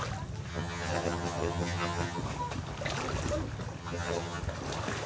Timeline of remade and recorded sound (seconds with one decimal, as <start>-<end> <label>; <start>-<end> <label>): 0.0-0.5 recorded; 0.5-2.2 remade; 2.2-3.8 recorded; 3.8-4.4 remade; 4.4-5.1 recorded